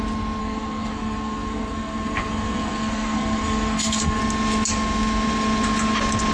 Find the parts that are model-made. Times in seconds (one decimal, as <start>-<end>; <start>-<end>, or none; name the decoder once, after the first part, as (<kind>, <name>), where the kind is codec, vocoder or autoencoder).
0.4-4.2 (codec, SNAC)